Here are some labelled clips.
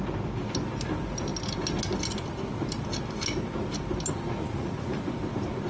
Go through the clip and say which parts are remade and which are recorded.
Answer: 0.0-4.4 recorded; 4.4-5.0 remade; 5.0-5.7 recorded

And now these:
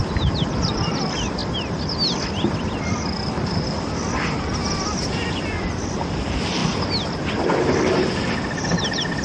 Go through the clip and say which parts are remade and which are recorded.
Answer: 0.0-9.2 recorded